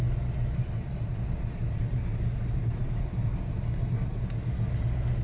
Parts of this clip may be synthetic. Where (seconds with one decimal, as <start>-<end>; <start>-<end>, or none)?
none